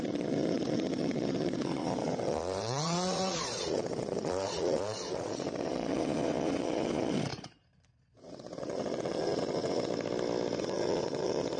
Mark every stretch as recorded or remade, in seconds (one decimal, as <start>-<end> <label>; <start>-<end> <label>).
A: 0.0-9.9 remade; 9.9-10.6 recorded; 10.6-11.6 remade